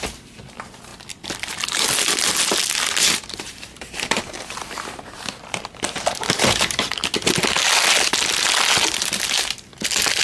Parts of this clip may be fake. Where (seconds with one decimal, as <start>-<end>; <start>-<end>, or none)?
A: 0.0-0.9; 3.0-7.0